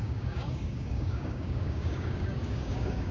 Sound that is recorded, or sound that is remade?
remade